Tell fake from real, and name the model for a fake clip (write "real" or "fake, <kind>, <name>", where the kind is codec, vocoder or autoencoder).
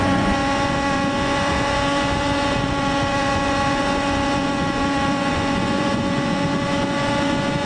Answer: fake, vocoder, Vocos